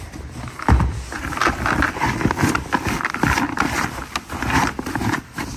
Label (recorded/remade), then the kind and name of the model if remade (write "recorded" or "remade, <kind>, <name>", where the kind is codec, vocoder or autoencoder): recorded